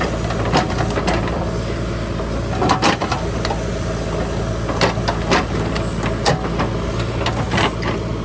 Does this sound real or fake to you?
real